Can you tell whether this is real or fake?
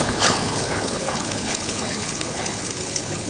fake